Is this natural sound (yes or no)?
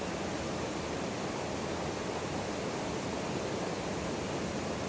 yes